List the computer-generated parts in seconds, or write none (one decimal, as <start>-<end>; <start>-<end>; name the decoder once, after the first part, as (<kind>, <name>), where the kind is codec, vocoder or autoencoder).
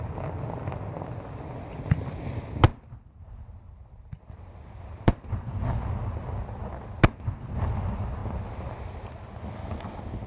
none